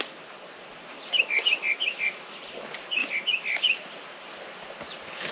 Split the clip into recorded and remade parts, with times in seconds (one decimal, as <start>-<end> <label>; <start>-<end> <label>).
0.0-5.3 recorded

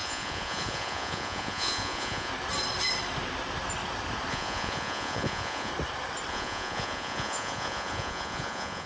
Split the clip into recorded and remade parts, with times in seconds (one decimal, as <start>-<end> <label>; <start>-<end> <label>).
0.0-2.3 remade; 2.3-4.3 recorded; 4.3-5.7 remade; 5.7-6.3 recorded; 6.3-8.9 remade